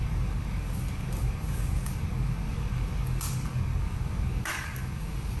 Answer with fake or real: fake